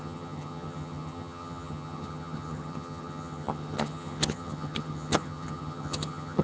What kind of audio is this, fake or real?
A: fake